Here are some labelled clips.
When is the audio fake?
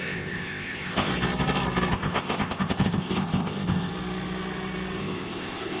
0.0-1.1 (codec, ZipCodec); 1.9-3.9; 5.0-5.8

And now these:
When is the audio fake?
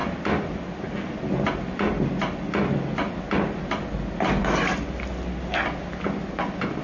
none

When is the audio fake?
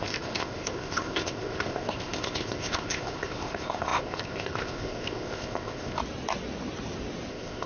0.0-6.0 (codec, ZipCodec); 7.3-7.7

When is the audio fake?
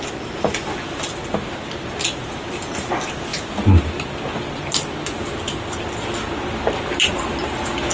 none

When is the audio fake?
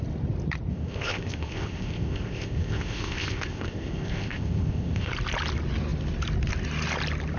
0.7-5.1 (codec, ZipCodec)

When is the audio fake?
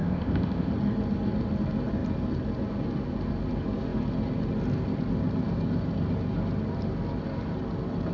0.0-0.7 (codec, ZipCodec)